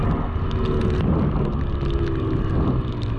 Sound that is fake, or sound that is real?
real